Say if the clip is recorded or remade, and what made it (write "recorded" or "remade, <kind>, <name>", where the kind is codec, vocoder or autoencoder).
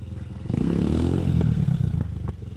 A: remade, codec, SNAC